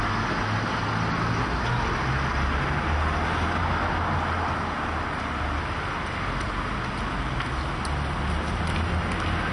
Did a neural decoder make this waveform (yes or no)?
no